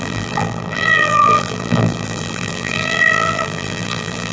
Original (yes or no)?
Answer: no